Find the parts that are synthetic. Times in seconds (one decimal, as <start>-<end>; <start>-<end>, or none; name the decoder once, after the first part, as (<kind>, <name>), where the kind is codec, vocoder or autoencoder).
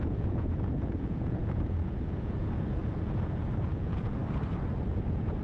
0.0-4.2 (vocoder, Vocos); 4.9-5.4